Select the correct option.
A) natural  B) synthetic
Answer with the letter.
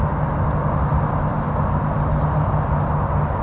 A